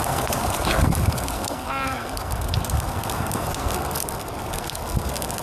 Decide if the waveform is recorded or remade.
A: remade